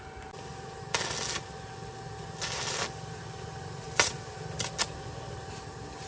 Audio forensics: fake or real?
real